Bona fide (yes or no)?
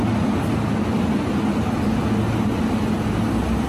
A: yes